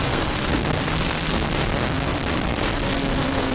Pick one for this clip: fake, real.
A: fake